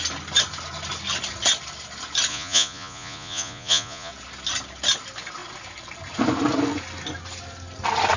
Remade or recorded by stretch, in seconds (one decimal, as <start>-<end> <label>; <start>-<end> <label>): 0.0-2.3 recorded; 2.3-4.1 remade; 4.1-8.2 recorded